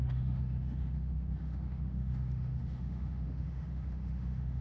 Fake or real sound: fake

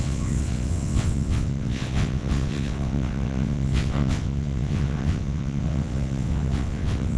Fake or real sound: fake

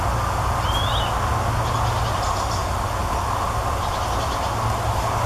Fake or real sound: real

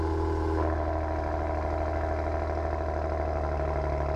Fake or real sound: real